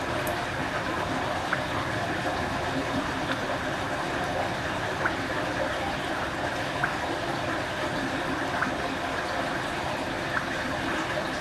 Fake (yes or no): no